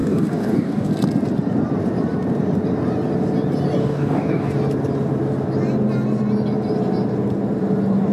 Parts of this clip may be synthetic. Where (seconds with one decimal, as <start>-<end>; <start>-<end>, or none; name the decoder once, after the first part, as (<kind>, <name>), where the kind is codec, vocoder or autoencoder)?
0.0-0.9 (codec, DAC); 3.8-4.5